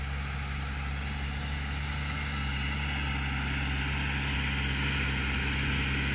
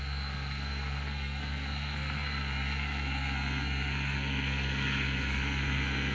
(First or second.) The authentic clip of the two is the first